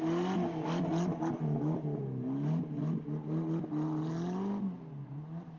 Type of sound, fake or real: real